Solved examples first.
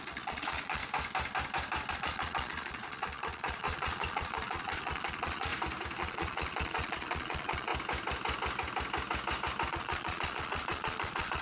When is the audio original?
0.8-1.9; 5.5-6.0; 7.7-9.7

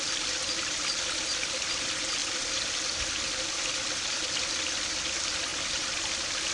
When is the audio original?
0.0-6.5

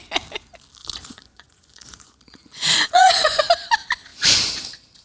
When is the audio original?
0.0-0.8; 3.4-4.1; 4.6-5.0

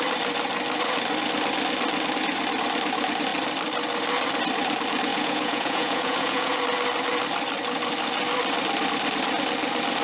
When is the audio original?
0.0-5.1; 6.6-10.0